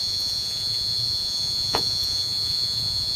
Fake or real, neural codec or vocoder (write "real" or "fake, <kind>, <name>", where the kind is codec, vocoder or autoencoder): fake, vocoder, Vocos